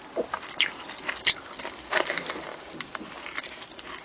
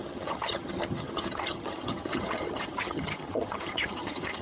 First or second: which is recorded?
first